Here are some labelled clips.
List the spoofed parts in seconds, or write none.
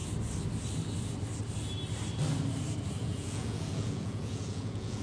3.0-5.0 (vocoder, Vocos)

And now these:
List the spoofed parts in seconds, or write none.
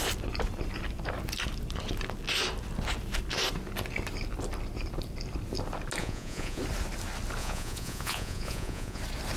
6.0-6.6 (vocoder, Vocos); 7.4-9.0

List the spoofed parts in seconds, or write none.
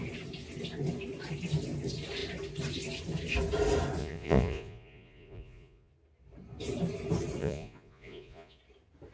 4.0-5.9 (vocoder, Vocos); 7.4-8.6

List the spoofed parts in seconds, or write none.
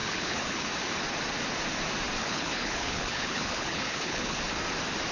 0.0-0.7 (codec, HILCodec); 2.2-4.4